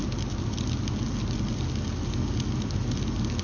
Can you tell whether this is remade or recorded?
recorded